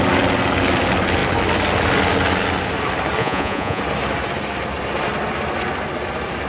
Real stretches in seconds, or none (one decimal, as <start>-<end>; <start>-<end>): 0.0-3.2; 3.8-6.5